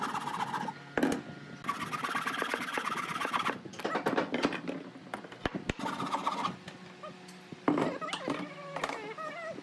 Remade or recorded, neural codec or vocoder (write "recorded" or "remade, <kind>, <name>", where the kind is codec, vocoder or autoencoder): recorded